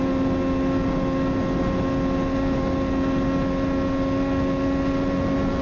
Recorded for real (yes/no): yes